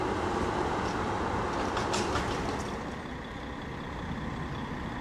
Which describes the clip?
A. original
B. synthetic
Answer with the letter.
A